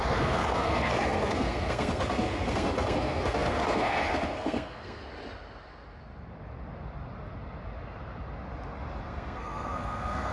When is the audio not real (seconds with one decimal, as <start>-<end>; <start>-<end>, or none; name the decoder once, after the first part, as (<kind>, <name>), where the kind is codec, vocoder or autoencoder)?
0.0-5.0 (codec, SNAC); 9.0-10.3